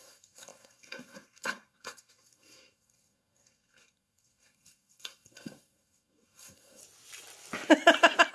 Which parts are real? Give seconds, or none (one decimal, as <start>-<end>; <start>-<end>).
6.8-8.3